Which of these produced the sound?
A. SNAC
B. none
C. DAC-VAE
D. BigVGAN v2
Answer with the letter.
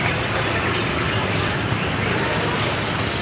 D